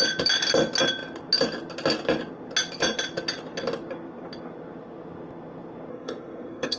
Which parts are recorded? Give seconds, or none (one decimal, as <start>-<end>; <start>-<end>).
0.0-5.9